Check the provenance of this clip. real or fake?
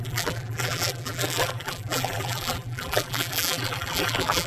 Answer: fake